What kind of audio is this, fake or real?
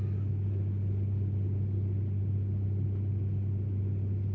real